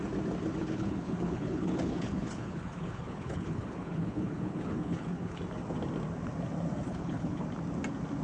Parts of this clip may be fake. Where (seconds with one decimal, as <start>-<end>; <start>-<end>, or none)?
0.6-5.4; 6.9-7.4